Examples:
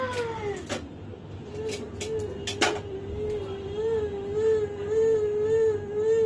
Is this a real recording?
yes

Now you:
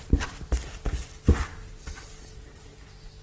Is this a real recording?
yes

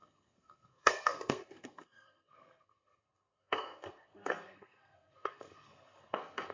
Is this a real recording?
no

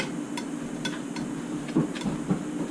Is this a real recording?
yes